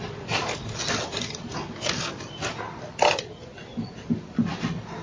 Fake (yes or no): no